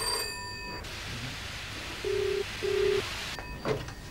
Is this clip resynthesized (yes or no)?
no